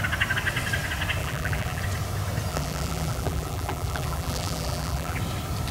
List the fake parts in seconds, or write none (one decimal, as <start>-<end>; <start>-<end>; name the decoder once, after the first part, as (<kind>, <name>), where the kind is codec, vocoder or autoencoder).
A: 1.2-1.8 (vocoder, BigVGAN v2); 2.5-5.2